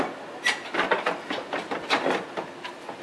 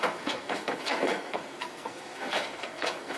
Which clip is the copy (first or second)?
second